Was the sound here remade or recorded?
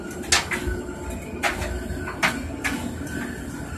recorded